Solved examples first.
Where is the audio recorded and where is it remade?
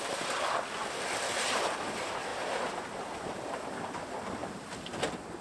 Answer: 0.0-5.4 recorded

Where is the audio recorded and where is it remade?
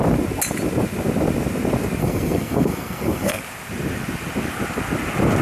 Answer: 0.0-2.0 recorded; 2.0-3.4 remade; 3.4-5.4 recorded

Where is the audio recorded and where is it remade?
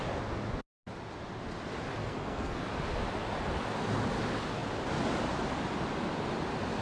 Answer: 0.0-2.0 recorded; 2.0-2.6 remade; 2.6-6.8 recorded